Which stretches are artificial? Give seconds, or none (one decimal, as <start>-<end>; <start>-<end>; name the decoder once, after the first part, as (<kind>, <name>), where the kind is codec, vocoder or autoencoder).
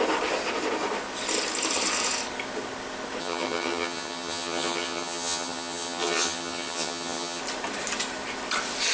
3.2-7.4 (vocoder, HiFi-GAN)